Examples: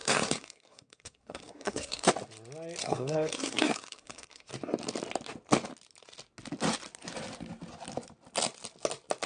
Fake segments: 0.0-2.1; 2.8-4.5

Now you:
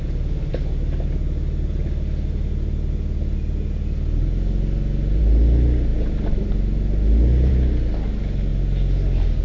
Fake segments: none

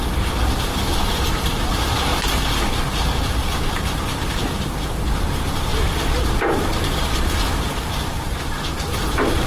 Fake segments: 0.0-9.5

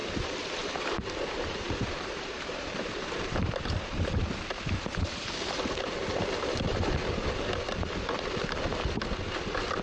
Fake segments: 0.0-4.4

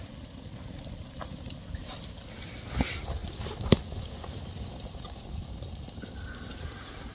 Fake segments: none

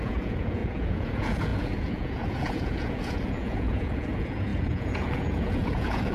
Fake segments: 0.0-6.1

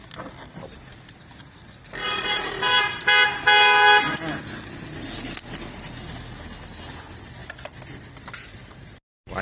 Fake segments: none